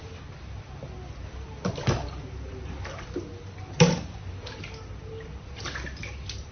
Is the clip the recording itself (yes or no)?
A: yes